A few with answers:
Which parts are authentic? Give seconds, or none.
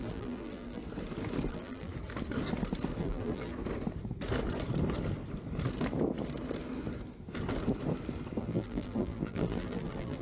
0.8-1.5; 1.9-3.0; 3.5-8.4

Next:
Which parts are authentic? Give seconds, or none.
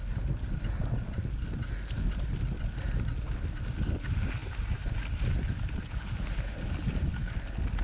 0.0-7.8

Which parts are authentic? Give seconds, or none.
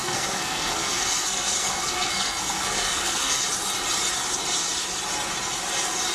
3.4-6.1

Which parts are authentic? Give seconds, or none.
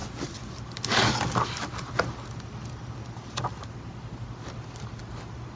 0.0-5.6